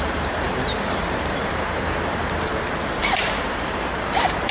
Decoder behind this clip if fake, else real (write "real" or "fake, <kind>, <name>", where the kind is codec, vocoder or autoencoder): fake, vocoder, BigVGAN v2